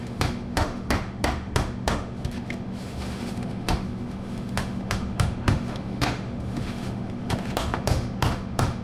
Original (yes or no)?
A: no